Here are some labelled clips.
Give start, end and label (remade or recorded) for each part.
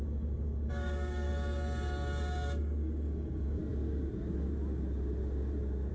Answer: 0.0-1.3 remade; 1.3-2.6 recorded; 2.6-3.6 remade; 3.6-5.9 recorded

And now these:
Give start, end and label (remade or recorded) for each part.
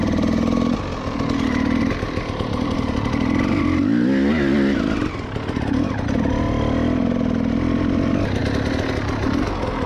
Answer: 0.0-1.8 recorded; 1.8-3.6 remade; 3.6-9.9 recorded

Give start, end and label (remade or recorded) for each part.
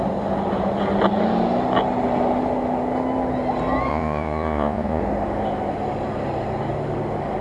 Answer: 0.0-3.9 recorded; 3.9-5.0 remade; 5.0-7.4 recorded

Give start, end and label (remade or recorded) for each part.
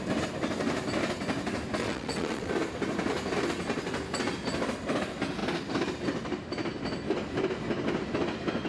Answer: 0.0-1.8 recorded; 1.8-2.5 remade; 2.5-8.7 recorded